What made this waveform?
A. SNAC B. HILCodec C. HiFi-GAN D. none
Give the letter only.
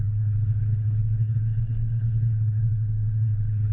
B